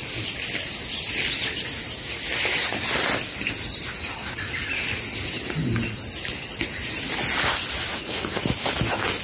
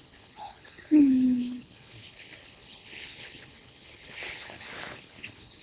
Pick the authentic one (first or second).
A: first